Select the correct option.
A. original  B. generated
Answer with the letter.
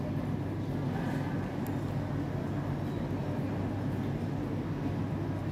A